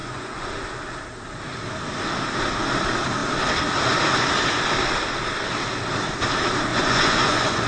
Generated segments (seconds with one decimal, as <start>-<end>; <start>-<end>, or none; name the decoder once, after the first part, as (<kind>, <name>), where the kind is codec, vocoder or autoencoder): 0.0-0.5 (vocoder, Vocos); 6.7-7.7

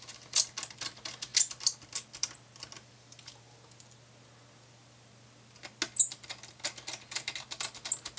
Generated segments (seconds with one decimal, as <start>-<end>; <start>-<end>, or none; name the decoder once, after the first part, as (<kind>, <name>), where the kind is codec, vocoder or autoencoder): none

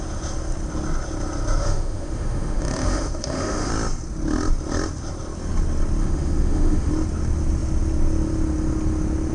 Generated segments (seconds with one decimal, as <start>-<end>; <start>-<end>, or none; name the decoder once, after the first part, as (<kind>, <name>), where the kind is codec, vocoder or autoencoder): 1.6-3.7 (autoencoder, DAC-VAE); 6.0-6.9

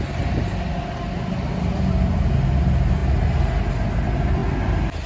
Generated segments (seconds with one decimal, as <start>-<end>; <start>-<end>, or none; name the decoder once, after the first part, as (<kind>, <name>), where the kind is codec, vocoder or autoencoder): none

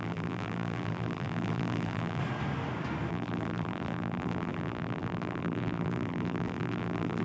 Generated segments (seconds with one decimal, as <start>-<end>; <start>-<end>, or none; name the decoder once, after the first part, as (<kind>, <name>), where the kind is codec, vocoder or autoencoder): 0.0-2.2 (vocoder, BigVGAN v2); 3.1-7.2

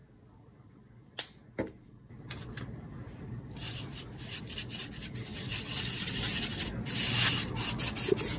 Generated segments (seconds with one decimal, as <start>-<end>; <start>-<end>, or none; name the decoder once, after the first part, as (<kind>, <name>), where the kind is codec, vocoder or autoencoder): 0.0-4.1 (vocoder, BigVGAN v2)